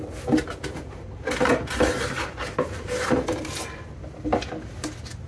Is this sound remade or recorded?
recorded